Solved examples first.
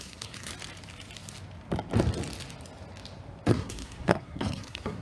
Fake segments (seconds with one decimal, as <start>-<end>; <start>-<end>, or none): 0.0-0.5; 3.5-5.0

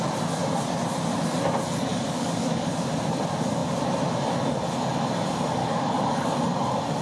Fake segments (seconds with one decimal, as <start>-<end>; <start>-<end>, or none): 1.9-2.7; 5.6-6.3

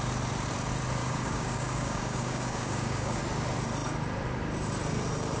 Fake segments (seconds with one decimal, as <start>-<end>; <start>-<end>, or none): 1.0-3.2

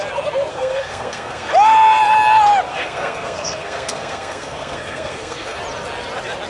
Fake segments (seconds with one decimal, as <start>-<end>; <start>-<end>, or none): 0.5-1.5; 2.7-5.6

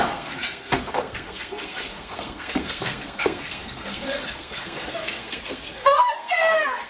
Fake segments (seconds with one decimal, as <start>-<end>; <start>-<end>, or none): 0.0-6.9

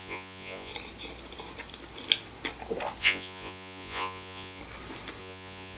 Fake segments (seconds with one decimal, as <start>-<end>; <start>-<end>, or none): 0.0-0.7; 3.0-4.6; 5.2-5.8

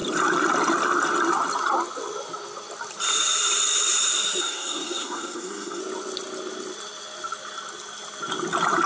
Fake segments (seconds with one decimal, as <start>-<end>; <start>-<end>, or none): 4.4-5.8